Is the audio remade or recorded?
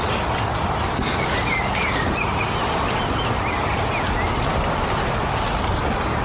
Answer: recorded